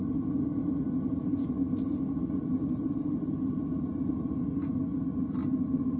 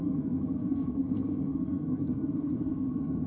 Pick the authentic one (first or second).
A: first